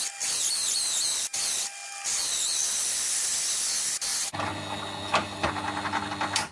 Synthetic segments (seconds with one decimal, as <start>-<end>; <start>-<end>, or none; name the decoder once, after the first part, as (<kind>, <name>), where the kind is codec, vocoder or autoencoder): none